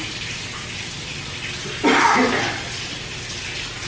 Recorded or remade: recorded